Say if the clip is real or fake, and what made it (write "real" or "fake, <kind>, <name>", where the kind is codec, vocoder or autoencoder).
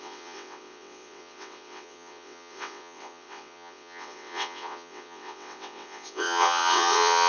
fake, vocoder, WaveNeXt